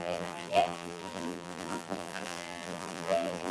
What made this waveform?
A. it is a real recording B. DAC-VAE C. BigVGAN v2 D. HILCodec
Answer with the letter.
C